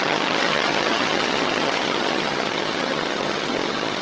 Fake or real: fake